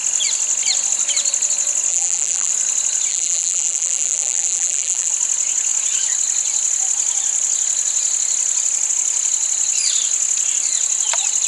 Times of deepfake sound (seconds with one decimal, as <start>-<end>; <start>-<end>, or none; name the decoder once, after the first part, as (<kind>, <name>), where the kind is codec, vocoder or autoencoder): 1.9-2.5 (vocoder, BigVGAN v2); 3.1-5.1